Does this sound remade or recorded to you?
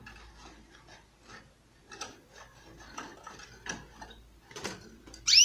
recorded